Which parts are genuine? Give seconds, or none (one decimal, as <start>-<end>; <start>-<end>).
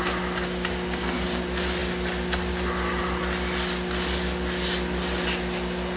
0.0-6.0